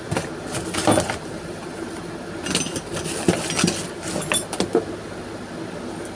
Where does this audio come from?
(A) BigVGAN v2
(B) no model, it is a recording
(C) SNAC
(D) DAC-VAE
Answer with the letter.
B